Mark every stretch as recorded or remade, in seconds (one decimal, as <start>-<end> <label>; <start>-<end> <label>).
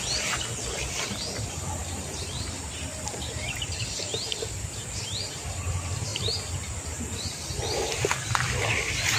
0.0-4.1 remade; 4.1-5.0 recorded; 5.0-6.1 remade; 6.1-8.0 recorded; 8.0-9.2 remade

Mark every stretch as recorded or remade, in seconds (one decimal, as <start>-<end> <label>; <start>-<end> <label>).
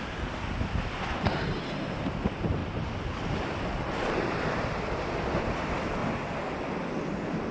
0.0-2.6 remade; 2.6-4.3 recorded; 4.3-6.0 remade; 6.0-7.1 recorded; 7.1-7.5 remade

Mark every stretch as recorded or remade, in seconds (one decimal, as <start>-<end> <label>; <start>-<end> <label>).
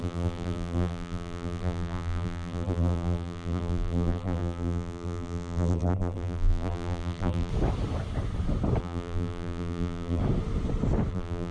0.0-7.5 remade; 7.5-8.8 recorded; 8.8-10.2 remade; 10.2-11.1 recorded; 11.1-11.5 remade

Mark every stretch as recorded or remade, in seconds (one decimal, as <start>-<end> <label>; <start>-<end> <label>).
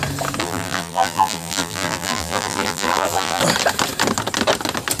0.0-0.4 recorded; 0.4-3.4 remade; 3.4-5.0 recorded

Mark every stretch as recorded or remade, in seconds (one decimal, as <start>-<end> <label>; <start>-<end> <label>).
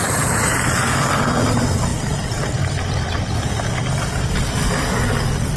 0.0-5.6 remade